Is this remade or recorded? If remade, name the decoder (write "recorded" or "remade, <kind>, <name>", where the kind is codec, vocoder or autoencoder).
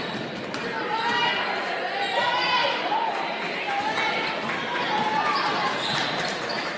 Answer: recorded